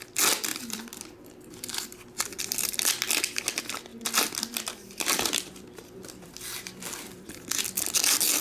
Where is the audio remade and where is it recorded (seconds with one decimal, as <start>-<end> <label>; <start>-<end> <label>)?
0.0-0.5 recorded; 0.5-3.4 remade; 3.4-3.9 recorded; 3.9-7.5 remade; 7.5-8.4 recorded